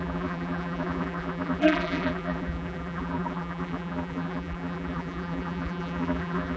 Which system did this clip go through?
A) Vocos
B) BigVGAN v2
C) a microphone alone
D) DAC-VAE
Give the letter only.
B